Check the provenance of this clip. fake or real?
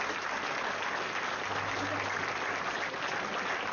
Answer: real